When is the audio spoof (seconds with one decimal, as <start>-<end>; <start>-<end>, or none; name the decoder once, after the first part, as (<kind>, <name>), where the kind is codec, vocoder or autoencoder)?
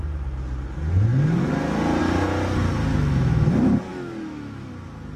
2.9-3.5 (autoencoder, DAC-VAE); 3.9-4.7